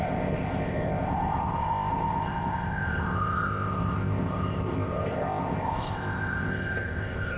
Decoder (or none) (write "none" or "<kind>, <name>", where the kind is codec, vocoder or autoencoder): codec, ZipCodec